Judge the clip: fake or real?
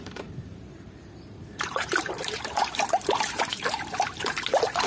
fake